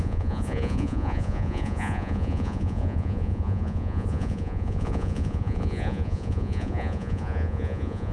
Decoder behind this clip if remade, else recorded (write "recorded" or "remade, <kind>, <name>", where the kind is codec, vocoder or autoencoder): remade, vocoder, Vocos